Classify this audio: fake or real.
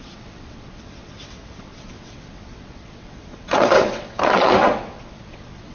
fake